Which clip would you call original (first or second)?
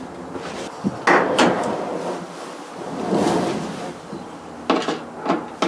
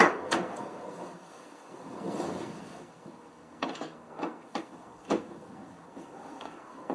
first